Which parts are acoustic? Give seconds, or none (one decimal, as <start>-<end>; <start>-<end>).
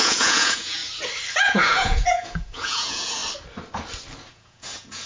0.8-1.3; 3.2-4.3